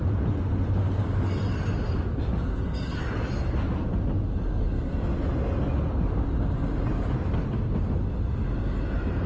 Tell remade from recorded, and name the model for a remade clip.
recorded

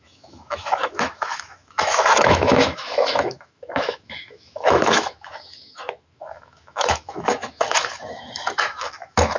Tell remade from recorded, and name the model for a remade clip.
remade, autoencoder, DAC-VAE